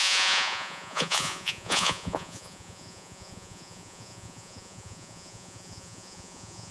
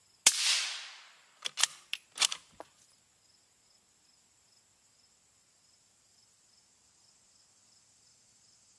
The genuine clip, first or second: second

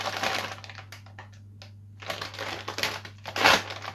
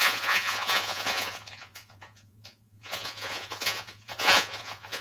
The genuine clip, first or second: first